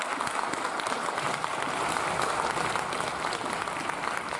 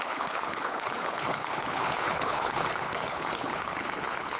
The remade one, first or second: second